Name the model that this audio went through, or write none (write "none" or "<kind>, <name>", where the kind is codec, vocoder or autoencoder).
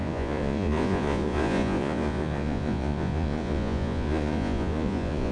vocoder, Vocos